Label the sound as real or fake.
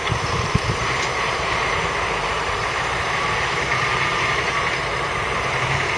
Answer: fake